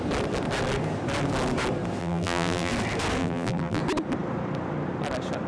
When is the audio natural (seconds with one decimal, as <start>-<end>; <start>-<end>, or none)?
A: 0.0-2.0; 2.7-3.2; 3.8-5.5